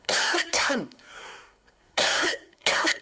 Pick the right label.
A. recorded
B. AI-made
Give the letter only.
B